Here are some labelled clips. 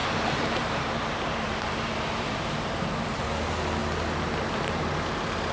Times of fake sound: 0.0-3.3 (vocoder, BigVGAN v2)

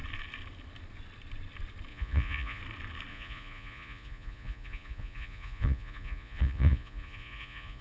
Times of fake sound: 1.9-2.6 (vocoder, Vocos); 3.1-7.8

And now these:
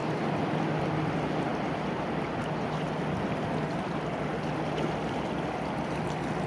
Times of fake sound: none

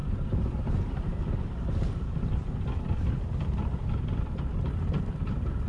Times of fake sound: 0.0-0.7 (vocoder, BigVGAN v2)

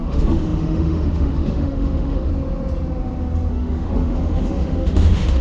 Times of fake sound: 0.0-2.3 (autoencoder, DAC-VAE); 3.5-5.4